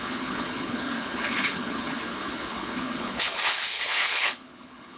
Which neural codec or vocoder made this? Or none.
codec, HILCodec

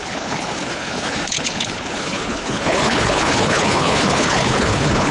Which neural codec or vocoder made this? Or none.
codec, HILCodec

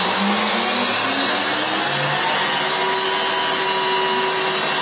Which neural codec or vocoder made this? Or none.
none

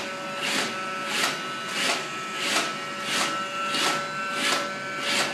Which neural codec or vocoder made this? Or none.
none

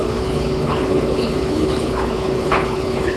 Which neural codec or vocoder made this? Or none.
codec, HILCodec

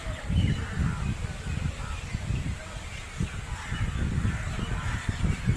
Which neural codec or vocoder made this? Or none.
none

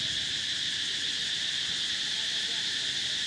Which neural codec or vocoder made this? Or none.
none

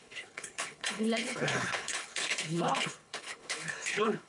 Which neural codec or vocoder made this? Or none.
codec, HILCodec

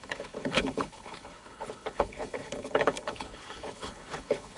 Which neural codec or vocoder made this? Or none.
codec, HILCodec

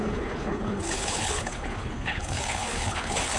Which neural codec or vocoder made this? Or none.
codec, HILCodec